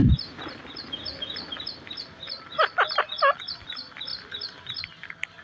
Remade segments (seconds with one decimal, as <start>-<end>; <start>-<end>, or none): none